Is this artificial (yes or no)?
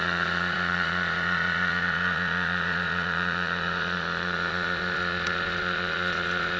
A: yes